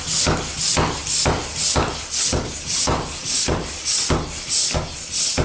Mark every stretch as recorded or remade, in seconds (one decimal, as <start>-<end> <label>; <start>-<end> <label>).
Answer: 0.0-2.3 recorded; 2.3-3.8 remade; 3.8-5.4 recorded